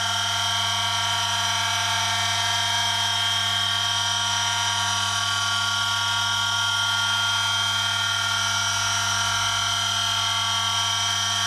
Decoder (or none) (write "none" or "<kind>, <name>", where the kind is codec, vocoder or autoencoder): none